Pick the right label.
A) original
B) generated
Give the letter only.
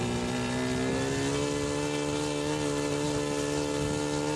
A